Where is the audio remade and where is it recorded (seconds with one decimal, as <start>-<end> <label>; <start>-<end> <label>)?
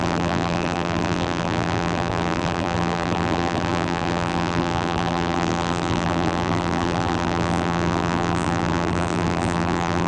0.0-10.1 remade